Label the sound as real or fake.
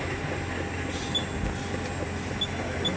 real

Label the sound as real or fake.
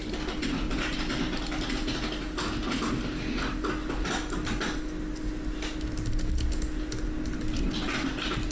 real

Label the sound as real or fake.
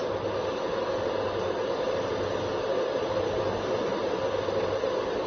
real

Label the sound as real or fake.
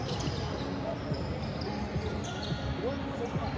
real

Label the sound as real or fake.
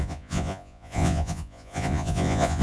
fake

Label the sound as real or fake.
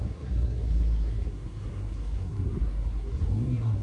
fake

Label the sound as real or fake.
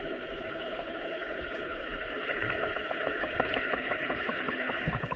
fake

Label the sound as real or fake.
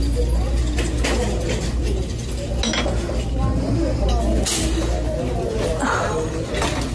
real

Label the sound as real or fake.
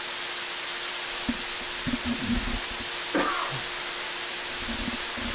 real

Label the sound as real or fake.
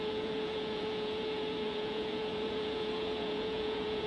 fake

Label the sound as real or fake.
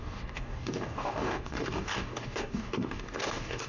fake